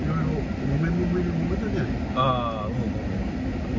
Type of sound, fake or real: real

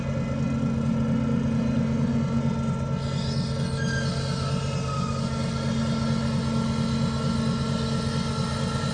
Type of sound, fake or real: real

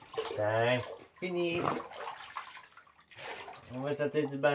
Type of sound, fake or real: real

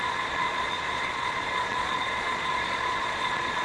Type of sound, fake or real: fake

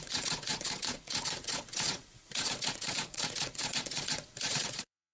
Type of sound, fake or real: fake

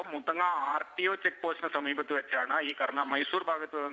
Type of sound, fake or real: fake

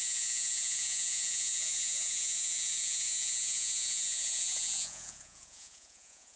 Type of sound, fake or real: fake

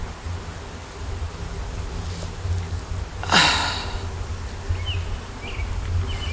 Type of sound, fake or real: real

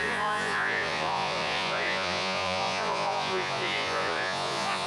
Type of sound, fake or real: fake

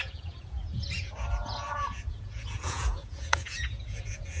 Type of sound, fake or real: fake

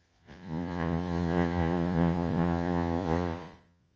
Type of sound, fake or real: fake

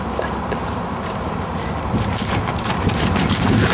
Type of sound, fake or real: real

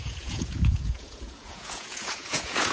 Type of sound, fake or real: fake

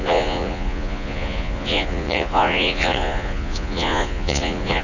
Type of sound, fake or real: fake